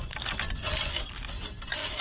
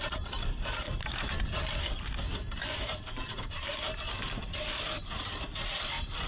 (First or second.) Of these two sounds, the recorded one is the first